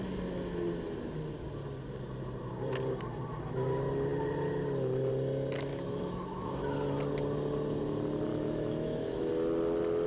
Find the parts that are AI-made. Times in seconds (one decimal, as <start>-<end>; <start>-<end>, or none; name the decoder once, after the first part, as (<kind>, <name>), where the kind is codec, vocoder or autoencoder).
5.7-6.5 (autoencoder, DAC-VAE); 8.3-9.3

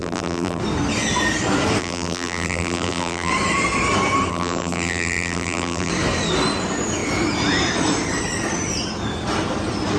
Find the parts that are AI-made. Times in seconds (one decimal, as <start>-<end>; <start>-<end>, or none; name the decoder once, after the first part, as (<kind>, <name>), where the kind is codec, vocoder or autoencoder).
0.0-0.6 (vocoder, BigVGAN v2); 1.8-3.3; 4.3-5.9

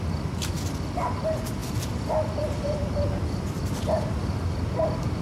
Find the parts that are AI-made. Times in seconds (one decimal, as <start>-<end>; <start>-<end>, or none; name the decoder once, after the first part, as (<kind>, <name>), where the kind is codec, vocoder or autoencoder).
none

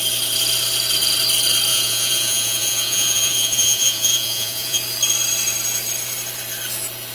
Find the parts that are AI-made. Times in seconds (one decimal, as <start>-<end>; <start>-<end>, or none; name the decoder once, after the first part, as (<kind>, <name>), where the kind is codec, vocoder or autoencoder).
1.7-4.8 (vocoder, Vocos)

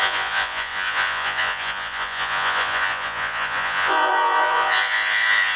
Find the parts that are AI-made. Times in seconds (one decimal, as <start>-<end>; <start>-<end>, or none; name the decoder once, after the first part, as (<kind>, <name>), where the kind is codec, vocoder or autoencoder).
0.0-5.6 (vocoder, Vocos)

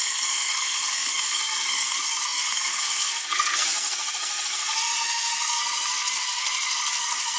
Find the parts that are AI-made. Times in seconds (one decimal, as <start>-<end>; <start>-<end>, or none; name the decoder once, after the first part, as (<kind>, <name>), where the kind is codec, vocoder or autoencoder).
0.0-7.4 (codec, SNAC)